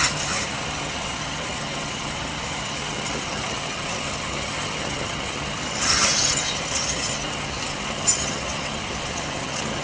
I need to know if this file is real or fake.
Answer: fake